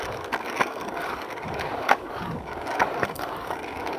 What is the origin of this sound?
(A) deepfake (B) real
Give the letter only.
A